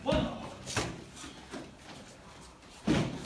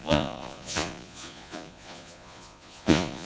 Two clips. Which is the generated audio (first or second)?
second